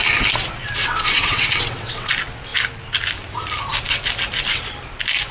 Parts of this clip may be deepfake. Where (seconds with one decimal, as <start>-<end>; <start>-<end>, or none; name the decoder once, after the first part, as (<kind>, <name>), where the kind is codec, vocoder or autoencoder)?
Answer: 0.8-2.1 (vocoder, WaveNeXt)